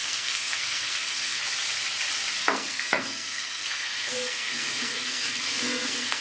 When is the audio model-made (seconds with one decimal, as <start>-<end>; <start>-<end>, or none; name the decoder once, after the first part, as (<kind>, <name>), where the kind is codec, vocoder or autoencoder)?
0.0-1.4 (codec, SNAC); 2.4-6.2